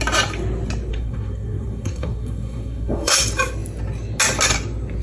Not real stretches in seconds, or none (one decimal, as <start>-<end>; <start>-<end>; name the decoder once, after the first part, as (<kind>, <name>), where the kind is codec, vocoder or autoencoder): 0.9-3.2 (codec, SNAC)